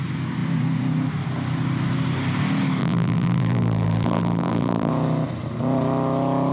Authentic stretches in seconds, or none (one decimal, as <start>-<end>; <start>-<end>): 0.0-2.8; 4.9-6.5